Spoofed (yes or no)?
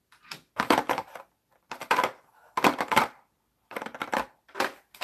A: no